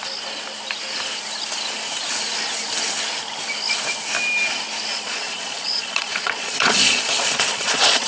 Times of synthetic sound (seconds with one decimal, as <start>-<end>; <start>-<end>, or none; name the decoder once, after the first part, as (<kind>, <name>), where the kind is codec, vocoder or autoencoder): 4.9-8.1 (vocoder, Vocos)

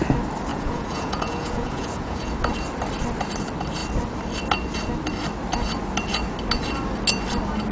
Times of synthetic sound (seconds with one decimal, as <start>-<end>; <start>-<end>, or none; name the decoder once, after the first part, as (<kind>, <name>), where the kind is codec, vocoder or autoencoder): 0.5-2.3 (vocoder, Vocos)